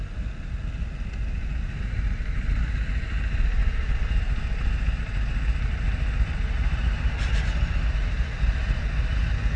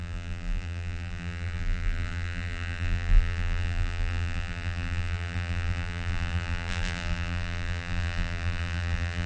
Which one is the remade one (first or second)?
second